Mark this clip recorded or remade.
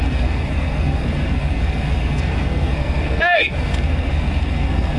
remade